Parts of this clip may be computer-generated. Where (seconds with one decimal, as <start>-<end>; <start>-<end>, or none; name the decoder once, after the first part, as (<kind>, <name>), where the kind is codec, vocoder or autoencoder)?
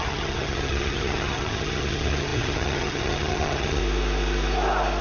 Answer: 0.0-3.8 (vocoder, HiFi-GAN)